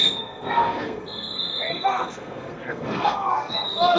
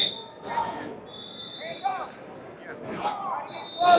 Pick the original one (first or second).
second